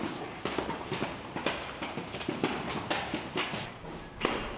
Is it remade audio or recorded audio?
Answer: recorded